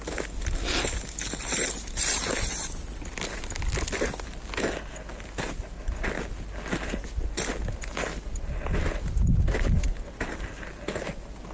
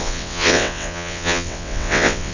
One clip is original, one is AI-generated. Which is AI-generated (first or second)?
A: second